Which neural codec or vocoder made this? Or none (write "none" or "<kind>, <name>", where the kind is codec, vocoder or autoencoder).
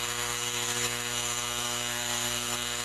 codec, SNAC